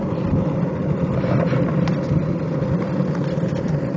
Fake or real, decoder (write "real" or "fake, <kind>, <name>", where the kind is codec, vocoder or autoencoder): real